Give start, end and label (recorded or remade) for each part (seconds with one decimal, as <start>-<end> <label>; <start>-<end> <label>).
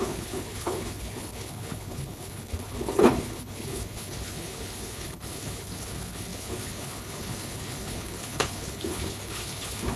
0.0-10.0 remade